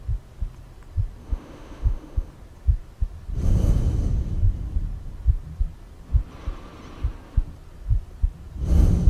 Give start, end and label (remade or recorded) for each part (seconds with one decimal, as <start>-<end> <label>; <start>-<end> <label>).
0.0-1.2 recorded; 1.2-2.3 remade; 2.3-9.1 recorded